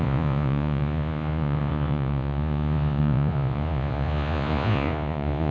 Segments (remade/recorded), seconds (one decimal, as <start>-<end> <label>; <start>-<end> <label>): 0.0-5.5 remade